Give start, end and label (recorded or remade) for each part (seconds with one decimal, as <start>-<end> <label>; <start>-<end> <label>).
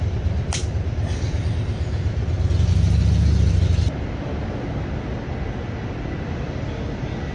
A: 0.0-7.3 recorded